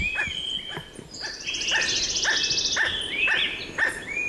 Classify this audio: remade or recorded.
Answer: recorded